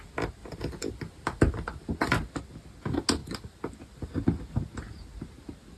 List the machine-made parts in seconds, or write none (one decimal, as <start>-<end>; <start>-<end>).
0.4-1.9